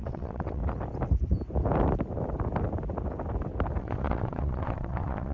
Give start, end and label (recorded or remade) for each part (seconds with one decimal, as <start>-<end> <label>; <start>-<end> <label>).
0.0-0.6 remade; 0.6-3.8 recorded; 3.8-5.3 remade